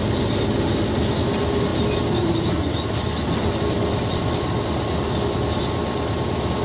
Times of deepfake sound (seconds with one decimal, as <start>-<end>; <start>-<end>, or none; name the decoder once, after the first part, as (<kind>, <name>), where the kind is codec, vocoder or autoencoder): none